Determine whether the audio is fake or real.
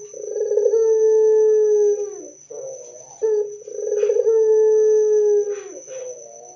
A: real